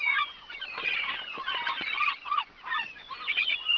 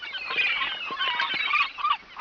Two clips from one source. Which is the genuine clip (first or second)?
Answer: second